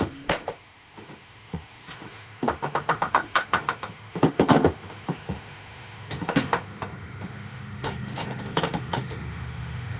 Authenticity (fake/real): fake